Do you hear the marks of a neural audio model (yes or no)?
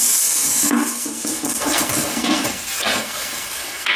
yes